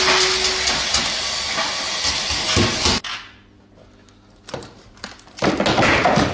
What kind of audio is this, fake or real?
real